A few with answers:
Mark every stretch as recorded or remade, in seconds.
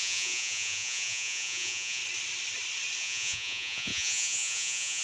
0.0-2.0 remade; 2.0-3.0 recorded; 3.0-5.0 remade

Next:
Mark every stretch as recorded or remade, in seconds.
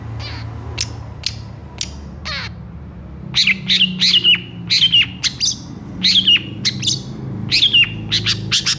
0.0-8.8 recorded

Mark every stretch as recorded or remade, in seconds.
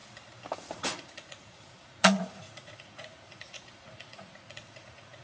0.0-0.8 recorded; 0.8-5.2 remade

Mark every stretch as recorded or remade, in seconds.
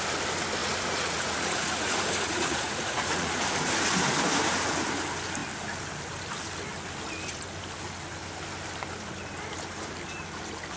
0.0-0.6 recorded; 0.6-3.3 remade; 3.3-10.8 recorded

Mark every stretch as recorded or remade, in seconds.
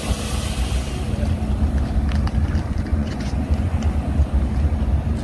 0.0-2.9 recorded; 2.9-3.9 remade; 3.9-5.2 recorded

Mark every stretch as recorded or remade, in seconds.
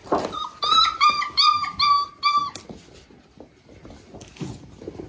0.0-5.1 recorded